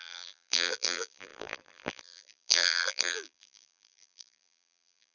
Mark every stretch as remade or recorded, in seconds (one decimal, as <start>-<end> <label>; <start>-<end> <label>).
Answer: 0.0-5.1 remade